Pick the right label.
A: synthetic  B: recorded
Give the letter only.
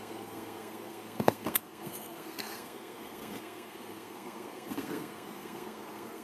A